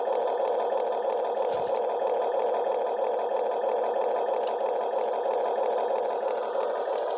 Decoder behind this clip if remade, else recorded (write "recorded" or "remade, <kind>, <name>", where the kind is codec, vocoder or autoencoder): recorded